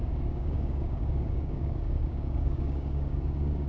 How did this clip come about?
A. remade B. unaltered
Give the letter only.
A